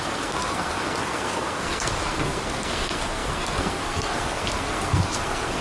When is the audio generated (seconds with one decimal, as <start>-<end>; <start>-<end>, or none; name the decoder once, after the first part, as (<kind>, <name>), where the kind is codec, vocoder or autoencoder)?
0.0-5.6 (codec, SNAC)